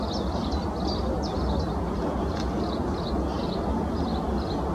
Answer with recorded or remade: recorded